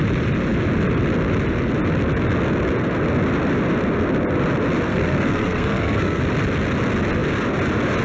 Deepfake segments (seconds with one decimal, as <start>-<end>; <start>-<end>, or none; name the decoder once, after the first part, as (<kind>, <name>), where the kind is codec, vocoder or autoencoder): 4.9-6.2 (codec, SNAC)